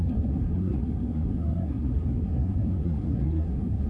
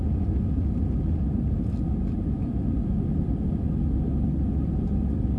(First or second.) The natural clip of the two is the second